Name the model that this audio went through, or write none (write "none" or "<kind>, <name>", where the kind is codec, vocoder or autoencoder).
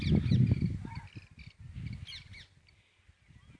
none